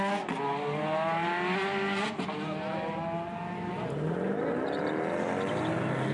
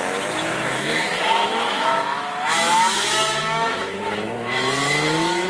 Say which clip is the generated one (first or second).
second